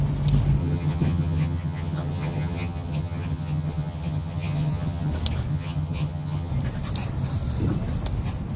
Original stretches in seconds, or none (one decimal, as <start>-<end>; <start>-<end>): 0.0-0.6; 5.1-5.5; 6.5-8.6